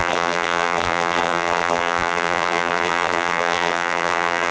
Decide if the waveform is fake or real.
fake